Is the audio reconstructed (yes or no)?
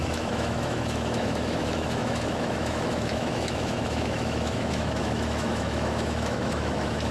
yes